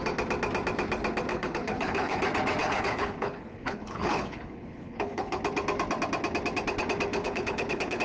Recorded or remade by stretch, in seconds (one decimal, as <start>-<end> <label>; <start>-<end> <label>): 0.0-1.3 recorded; 1.3-2.2 remade; 2.2-2.6 recorded; 2.6-5.4 remade; 5.4-7.1 recorded; 7.1-8.0 remade